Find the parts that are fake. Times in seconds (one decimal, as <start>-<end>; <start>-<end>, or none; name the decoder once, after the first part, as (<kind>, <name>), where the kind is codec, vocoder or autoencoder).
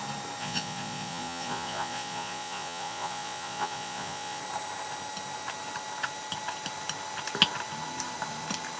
0.4-4.4 (vocoder, Vocos)